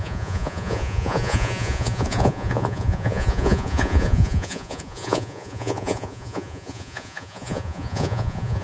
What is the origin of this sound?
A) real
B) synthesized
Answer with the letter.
B